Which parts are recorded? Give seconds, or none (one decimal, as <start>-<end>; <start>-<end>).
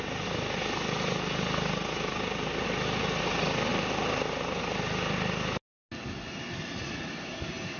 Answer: 0.0-7.8